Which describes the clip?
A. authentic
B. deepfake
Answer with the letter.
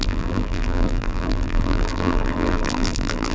B